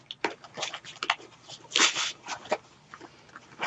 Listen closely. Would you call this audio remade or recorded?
recorded